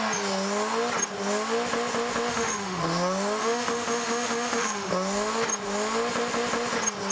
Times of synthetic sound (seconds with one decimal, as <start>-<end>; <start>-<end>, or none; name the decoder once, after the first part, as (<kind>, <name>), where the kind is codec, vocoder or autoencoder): 2.3-2.8 (autoencoder, DAC-VAE); 3.4-4.9